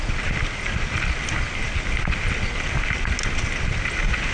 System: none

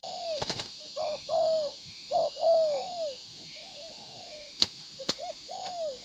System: autoencoder, DAC-VAE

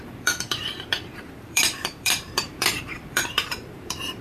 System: vocoder, BigVGAN v2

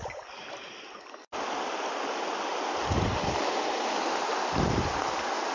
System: none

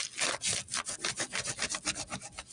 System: none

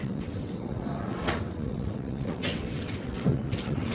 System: vocoder, WaveNeXt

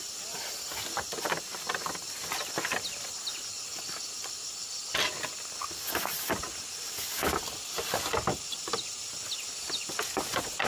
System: none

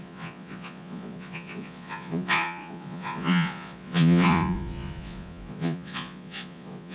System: vocoder, Vocos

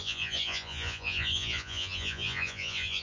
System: vocoder, Vocos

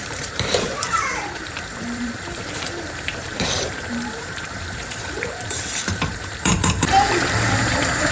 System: vocoder, BigVGAN v2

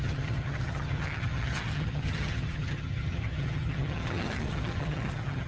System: vocoder, HiFi-GAN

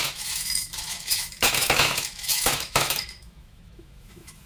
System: autoencoder, DAC-VAE